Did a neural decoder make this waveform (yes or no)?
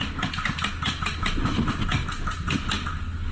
no